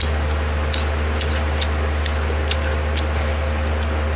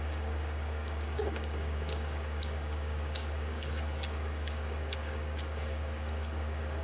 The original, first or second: first